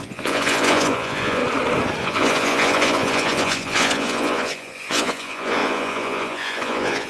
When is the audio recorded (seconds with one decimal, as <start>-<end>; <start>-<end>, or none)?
1.4-2.0